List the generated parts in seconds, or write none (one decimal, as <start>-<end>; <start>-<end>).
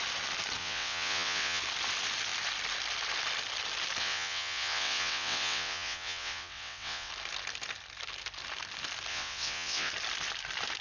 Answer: 0.6-1.6; 4.0-7.1; 9.1-9.9